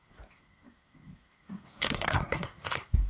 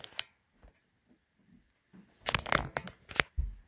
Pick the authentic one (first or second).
second